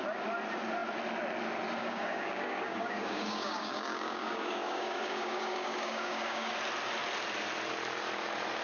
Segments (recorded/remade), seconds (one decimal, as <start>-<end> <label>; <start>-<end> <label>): 0.0-1.8 recorded; 1.8-6.5 remade; 6.5-8.6 recorded